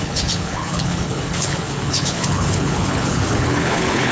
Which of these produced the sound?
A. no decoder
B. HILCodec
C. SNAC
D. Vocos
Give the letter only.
B